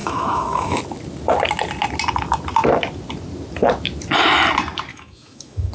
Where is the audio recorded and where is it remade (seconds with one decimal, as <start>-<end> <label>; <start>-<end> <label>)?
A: 0.0-0.8 remade; 0.8-4.9 recorded; 4.9-5.7 remade